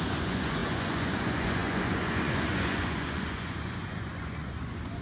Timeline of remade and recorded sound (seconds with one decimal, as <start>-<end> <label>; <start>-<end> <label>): 0.0-5.0 remade